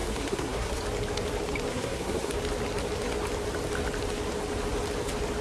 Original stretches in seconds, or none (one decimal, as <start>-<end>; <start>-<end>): 0.8-1.7; 2.3-5.4